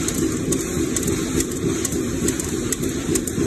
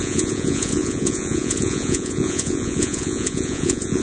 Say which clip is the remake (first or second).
second